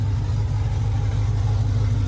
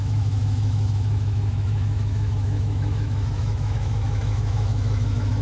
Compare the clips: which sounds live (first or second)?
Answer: first